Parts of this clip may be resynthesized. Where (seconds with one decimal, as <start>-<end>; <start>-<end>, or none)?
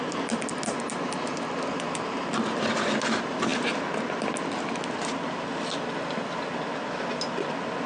none